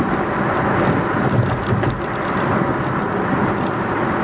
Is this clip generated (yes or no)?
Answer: no